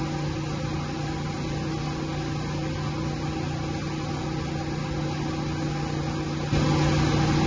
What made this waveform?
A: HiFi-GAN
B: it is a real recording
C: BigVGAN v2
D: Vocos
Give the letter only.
B